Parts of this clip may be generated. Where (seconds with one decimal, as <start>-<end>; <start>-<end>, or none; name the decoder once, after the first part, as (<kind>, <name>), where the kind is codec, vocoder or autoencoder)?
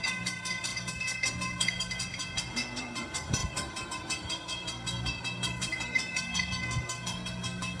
0.0-7.8 (codec, SNAC)